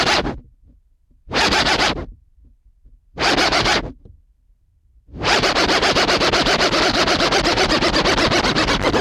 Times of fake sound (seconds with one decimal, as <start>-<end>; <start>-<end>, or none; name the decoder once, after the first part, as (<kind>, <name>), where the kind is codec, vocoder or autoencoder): 0.0-9.0 (vocoder, BigVGAN v2)